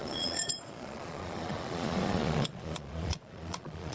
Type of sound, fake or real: fake